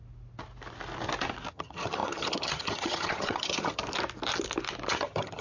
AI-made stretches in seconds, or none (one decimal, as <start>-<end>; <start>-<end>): 1.5-3.8; 4.9-5.4